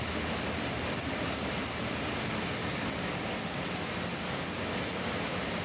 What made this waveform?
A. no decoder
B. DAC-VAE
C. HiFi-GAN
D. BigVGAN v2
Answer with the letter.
A